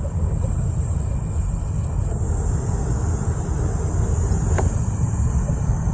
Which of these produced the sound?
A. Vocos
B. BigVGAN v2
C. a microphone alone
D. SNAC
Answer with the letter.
C